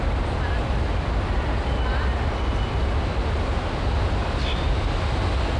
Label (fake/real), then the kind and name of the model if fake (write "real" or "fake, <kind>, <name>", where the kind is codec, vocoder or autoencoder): real